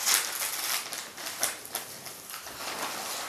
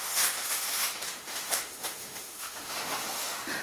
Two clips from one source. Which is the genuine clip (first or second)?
first